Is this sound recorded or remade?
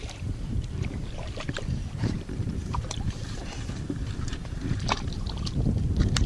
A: remade